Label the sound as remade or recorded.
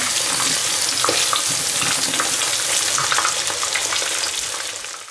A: recorded